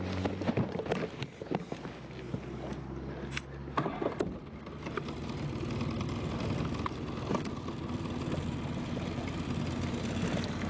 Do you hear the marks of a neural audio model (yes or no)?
no